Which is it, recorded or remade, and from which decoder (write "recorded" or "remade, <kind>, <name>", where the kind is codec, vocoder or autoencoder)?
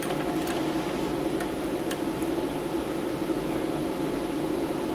recorded